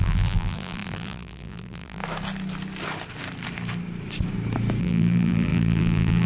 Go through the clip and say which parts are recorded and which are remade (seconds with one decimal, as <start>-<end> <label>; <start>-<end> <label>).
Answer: 0.0-2.0 remade; 2.0-4.8 recorded; 4.8-6.3 remade